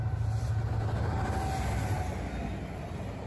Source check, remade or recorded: recorded